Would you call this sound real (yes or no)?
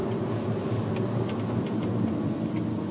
yes